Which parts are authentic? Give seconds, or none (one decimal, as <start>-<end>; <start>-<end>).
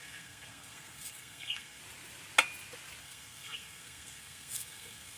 1.8-3.0